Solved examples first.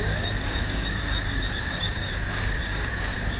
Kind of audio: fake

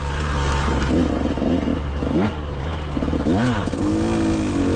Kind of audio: real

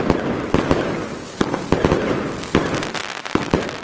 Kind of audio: real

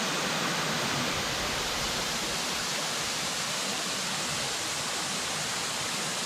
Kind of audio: real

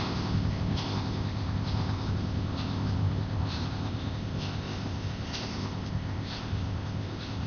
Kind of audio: fake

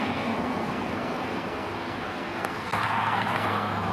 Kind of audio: fake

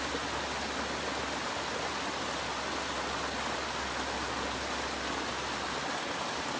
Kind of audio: real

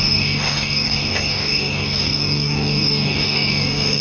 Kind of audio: fake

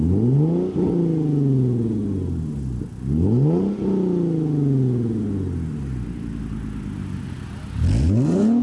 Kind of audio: real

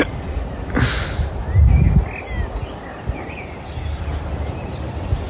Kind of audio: real